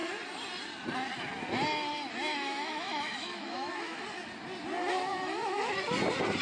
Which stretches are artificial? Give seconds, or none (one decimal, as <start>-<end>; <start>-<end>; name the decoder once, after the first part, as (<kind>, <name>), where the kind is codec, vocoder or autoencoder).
2.3-4.0 (autoencoder, DAC-VAE); 5.1-5.7